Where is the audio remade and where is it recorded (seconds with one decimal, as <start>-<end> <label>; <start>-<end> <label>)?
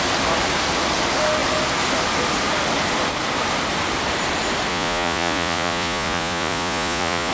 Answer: 0.0-4.7 recorded; 4.7-7.3 remade